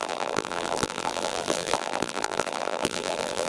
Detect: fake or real fake